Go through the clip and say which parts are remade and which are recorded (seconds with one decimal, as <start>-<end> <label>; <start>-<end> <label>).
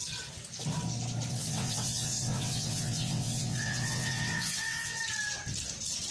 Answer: 0.0-1.3 recorded; 1.3-5.0 remade; 5.0-6.1 recorded